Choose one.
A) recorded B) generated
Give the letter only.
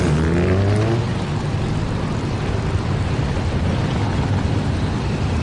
A